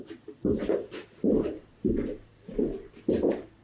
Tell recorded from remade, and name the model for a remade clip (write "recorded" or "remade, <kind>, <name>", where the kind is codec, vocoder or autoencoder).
recorded